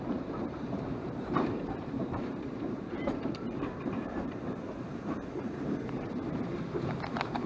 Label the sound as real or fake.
fake